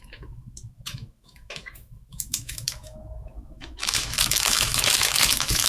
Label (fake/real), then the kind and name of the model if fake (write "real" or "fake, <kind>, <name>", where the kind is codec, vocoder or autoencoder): fake, autoencoder, DAC-VAE